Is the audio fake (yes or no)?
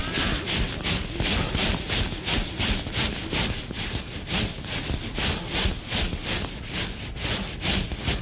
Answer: no